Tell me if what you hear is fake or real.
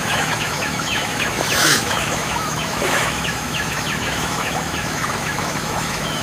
fake